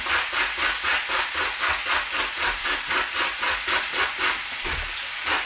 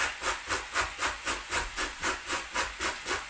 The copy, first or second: second